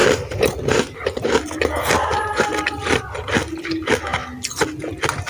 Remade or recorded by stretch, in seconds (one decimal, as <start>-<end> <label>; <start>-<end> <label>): 0.0-3.0 remade; 3.0-5.3 recorded